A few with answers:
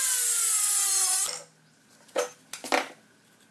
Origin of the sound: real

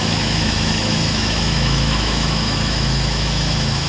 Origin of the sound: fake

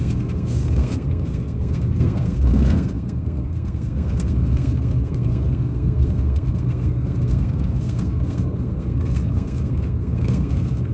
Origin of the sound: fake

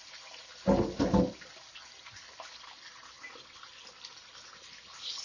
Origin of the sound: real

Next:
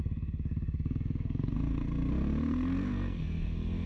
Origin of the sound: fake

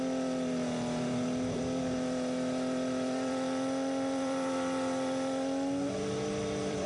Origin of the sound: fake